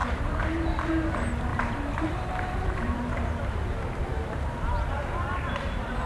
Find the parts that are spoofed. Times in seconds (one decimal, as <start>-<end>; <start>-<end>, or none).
0.0-0.9; 1.5-3.3